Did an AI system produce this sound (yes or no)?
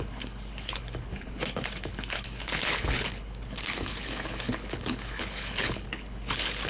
yes